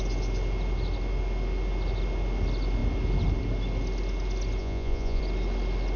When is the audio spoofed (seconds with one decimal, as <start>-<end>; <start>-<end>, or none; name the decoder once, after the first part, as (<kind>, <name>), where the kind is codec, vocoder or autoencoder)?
4.6-5.2 (vocoder, Vocos)